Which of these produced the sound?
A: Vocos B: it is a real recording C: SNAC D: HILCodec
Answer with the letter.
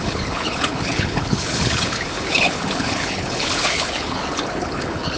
D